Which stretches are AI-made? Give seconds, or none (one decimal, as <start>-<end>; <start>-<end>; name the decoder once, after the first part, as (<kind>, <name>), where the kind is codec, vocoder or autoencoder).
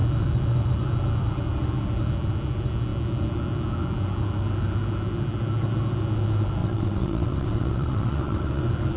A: 6.6-8.6 (vocoder, WaveNeXt)